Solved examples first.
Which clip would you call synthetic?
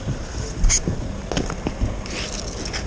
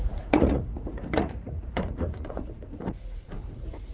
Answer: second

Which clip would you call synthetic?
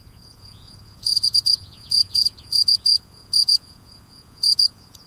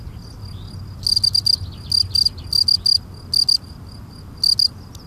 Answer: first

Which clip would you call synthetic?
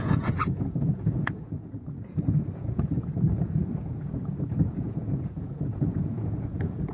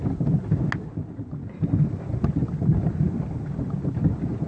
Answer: first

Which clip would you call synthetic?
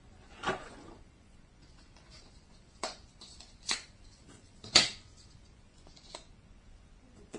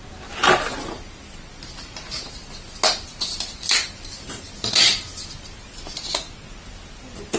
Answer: first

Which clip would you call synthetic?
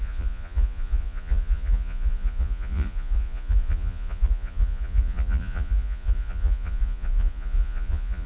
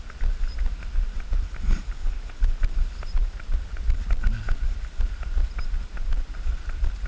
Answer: first